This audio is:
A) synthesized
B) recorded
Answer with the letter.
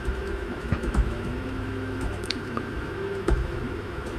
A